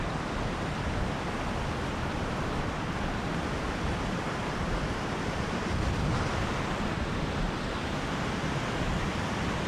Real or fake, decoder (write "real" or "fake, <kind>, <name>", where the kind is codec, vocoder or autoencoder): fake, vocoder, BigVGAN v2